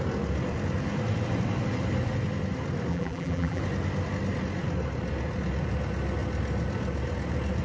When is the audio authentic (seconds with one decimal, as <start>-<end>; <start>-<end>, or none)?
0.0-2.9; 3.6-7.6

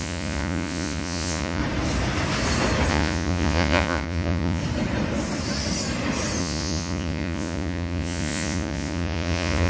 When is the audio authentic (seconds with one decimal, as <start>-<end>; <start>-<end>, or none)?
1.6-2.9; 4.6-6.4

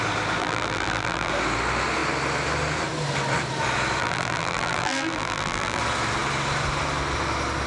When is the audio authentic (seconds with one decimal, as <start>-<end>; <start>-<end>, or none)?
0.0-0.4; 1.3-4.0; 5.8-7.7

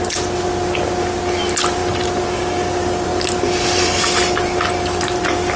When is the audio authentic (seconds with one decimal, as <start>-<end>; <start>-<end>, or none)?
0.0-5.6

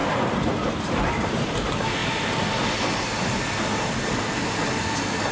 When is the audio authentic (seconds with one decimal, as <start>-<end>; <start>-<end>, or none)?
2.0-5.3